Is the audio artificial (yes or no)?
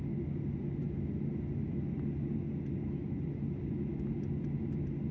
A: no